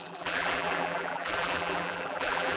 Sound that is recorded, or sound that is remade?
remade